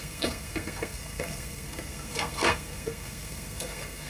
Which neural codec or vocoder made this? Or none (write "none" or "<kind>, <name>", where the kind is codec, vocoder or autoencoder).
codec, SNAC